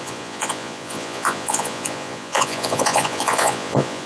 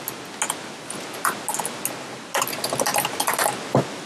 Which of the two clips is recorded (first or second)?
second